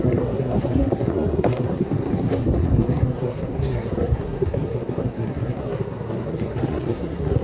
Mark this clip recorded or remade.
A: remade